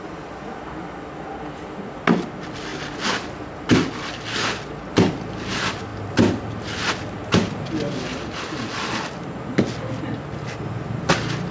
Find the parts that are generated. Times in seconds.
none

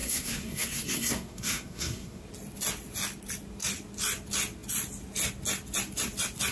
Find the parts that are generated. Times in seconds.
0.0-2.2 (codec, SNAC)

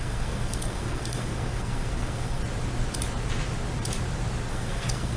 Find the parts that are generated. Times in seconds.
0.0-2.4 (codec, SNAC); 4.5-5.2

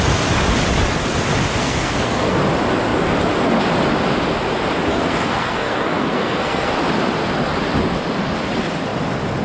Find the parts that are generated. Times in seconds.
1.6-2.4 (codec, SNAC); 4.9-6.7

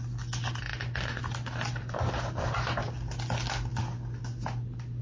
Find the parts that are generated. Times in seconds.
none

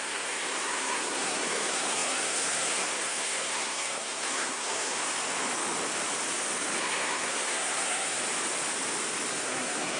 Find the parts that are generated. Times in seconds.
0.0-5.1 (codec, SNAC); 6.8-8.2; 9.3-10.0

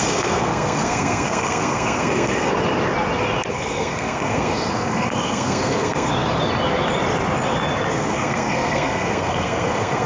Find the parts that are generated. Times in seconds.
0.0-2.5 (codec, SNAC); 3.5-6.1; 7.9-10.1

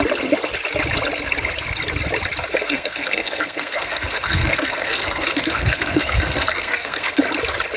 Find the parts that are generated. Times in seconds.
2.5-7.2 (codec, SNAC)